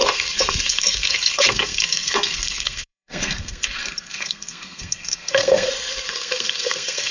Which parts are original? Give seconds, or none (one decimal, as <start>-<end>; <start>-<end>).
none